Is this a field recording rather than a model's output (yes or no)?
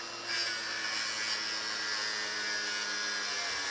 yes